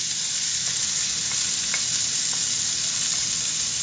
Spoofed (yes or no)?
no